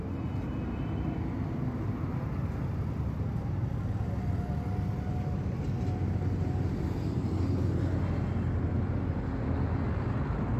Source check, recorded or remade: recorded